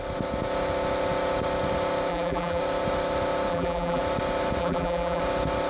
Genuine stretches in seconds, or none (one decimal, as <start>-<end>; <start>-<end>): 0.0-2.1; 2.6-3.5; 4.0-4.6; 5.2-5.7